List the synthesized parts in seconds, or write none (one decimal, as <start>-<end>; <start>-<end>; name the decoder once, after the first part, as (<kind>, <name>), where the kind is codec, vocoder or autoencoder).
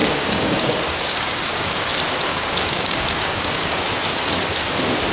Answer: 0.0-1.8 (codec, DAC); 2.3-3.9